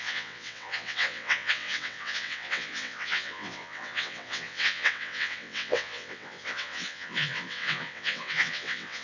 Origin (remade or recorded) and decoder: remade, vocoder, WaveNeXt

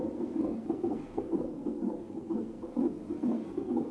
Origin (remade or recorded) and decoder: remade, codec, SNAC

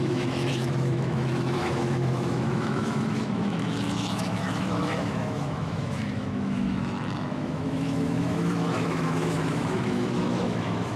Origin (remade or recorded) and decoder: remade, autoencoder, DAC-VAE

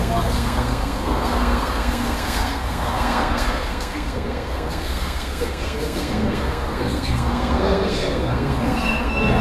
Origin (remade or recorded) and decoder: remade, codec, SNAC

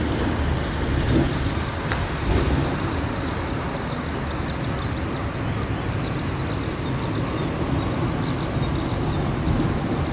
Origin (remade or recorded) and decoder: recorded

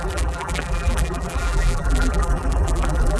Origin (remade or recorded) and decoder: remade, vocoder, BigVGAN v2